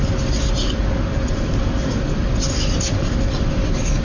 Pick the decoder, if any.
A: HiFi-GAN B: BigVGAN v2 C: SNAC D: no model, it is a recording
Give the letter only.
D